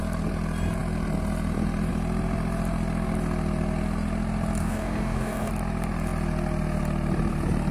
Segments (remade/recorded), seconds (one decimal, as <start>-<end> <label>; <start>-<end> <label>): 0.0-4.6 recorded; 4.6-5.5 remade; 5.5-7.7 recorded